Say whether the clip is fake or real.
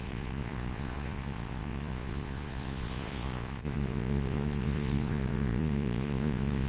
fake